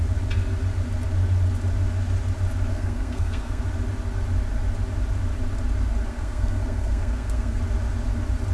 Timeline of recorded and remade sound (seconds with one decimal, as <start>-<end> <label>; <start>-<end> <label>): 0.0-2.7 recorded; 2.7-3.6 remade; 3.6-6.1 recorded; 6.1-7.6 remade; 7.6-8.5 recorded